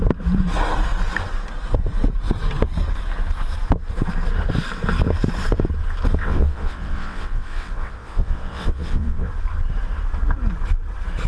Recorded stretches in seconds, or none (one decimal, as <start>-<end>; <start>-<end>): 0.0-6.2; 9.3-11.3